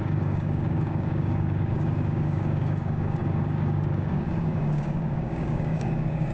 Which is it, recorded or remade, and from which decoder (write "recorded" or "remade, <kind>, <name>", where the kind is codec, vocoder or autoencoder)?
remade, codec, DAC